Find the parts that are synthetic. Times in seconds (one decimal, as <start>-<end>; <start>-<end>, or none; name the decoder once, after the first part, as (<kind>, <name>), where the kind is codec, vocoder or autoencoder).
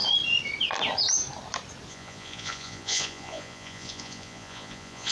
1.9-5.1 (vocoder, Vocos)